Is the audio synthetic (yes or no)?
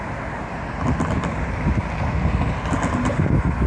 no